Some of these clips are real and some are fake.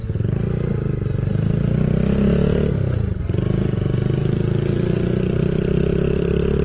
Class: real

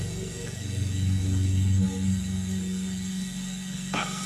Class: fake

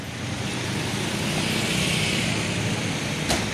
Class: real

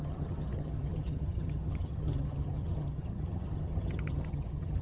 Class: fake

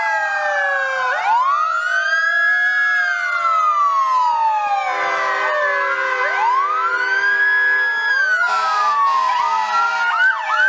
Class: real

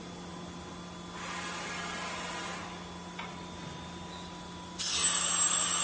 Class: real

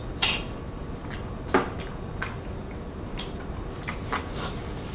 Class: real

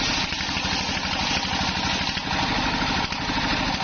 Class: real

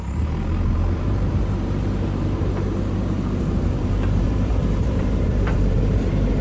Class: fake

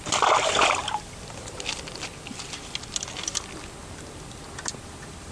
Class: real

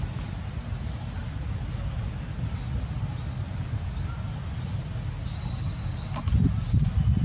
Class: real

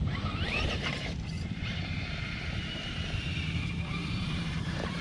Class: fake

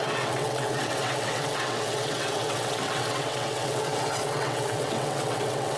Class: fake